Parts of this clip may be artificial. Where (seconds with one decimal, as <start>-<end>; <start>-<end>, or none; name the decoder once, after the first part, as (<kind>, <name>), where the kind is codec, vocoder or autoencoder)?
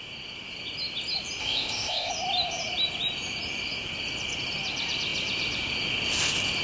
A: 1.4-2.1 (codec, ZipCodec)